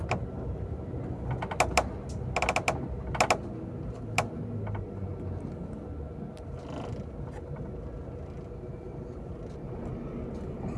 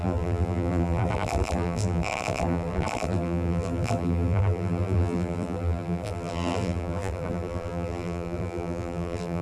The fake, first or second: second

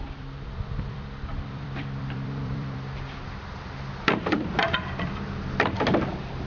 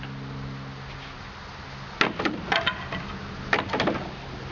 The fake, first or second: first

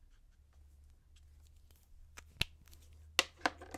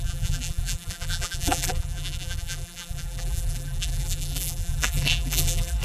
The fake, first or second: second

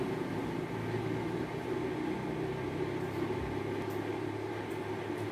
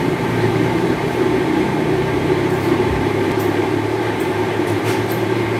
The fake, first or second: second